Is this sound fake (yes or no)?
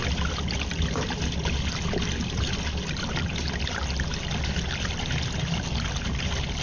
no